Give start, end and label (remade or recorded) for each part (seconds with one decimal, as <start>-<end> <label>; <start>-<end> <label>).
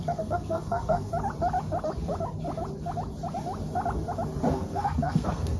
0.0-1.1 remade; 1.1-4.5 recorded; 4.5-5.6 remade